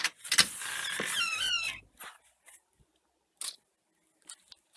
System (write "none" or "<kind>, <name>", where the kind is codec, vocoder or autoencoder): none